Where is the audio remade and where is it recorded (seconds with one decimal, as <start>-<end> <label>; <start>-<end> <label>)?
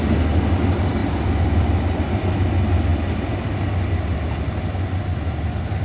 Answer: 0.0-5.8 recorded